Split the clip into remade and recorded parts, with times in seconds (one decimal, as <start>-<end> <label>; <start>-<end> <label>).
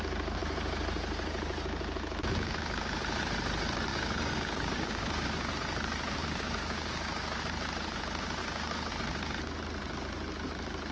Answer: 0.0-3.9 recorded; 3.9-5.5 remade; 5.5-6.2 recorded; 6.2-7.4 remade; 7.4-8.4 recorded; 8.4-8.9 remade; 8.9-10.9 recorded